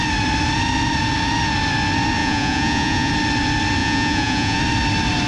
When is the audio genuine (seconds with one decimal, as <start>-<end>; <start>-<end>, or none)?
0.0-2.2; 3.1-3.8; 4.6-5.3